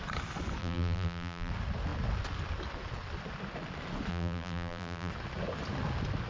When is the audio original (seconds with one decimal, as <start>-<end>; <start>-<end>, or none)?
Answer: 0.0-0.6; 1.5-4.1; 5.1-6.3